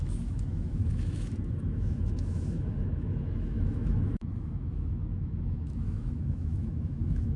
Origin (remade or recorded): remade